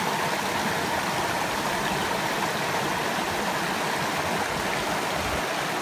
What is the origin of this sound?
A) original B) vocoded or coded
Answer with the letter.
A